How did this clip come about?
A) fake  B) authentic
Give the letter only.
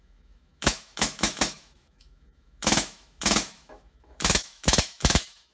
A